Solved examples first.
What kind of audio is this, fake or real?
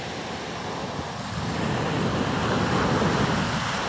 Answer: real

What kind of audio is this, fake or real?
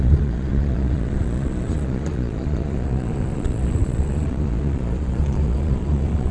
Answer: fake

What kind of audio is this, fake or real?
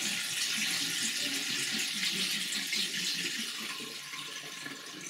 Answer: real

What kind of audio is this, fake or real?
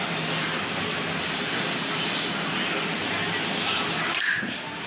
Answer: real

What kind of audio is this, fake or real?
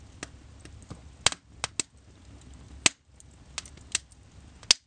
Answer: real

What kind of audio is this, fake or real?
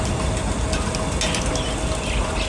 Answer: real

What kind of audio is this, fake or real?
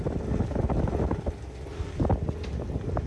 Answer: real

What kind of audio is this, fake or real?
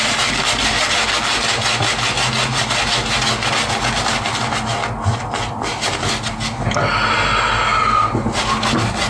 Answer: real